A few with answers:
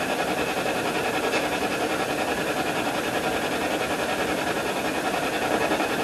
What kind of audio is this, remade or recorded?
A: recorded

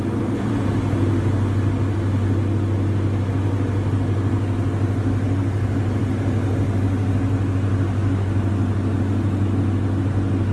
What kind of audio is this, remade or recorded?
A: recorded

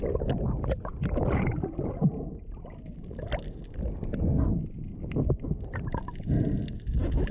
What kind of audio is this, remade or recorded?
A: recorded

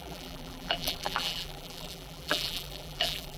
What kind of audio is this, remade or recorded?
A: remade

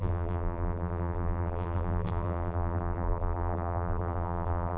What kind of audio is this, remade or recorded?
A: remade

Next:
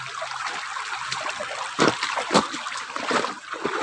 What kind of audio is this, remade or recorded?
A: remade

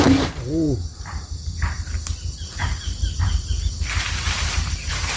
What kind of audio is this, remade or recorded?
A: remade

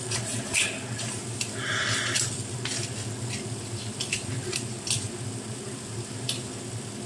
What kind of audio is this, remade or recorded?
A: remade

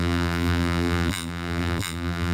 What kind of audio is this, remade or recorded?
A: remade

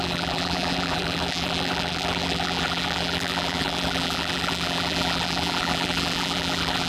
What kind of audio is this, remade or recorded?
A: remade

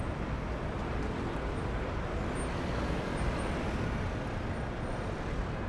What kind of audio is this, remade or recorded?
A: recorded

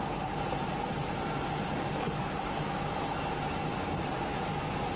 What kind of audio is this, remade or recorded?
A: recorded